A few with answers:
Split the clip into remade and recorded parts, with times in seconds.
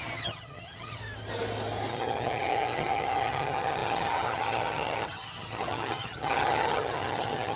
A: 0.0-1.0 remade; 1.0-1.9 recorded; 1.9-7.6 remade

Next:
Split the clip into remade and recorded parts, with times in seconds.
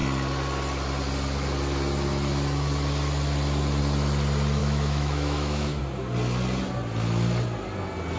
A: 0.0-4.6 recorded; 4.6-5.8 remade; 5.8-8.2 recorded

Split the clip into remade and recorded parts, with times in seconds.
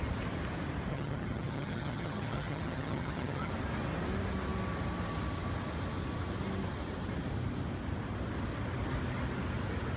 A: 0.0-0.9 recorded; 0.9-3.5 remade; 3.5-10.0 recorded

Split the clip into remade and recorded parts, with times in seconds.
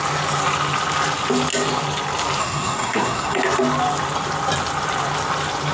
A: 0.0-2.4 recorded; 2.4-3.4 remade; 3.4-5.7 recorded